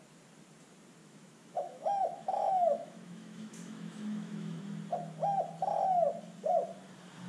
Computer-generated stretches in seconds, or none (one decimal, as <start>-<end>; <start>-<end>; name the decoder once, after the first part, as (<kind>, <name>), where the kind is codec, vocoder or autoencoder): 1.0-4.8 (autoencoder, DAC-VAE)

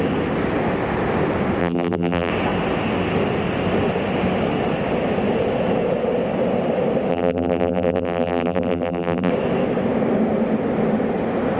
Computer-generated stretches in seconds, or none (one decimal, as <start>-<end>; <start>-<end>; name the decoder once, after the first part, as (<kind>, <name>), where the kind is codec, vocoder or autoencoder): 1.6-2.3 (vocoder, BigVGAN v2); 7.1-9.3

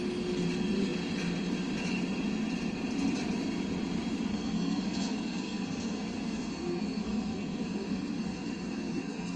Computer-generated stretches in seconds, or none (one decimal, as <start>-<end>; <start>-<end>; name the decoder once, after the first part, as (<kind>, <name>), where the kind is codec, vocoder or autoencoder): 4.3-9.4 (codec, SNAC)